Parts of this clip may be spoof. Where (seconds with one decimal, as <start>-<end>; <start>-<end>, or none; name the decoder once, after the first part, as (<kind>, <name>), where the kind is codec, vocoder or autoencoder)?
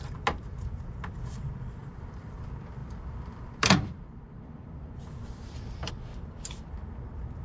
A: 1.8-2.4 (vocoder, BigVGAN v2); 2.8-5.9